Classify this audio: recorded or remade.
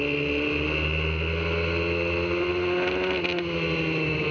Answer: recorded